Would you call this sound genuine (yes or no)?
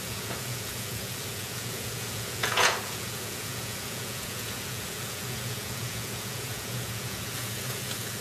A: no